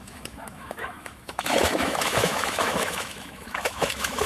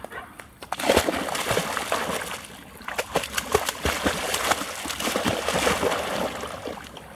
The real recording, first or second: second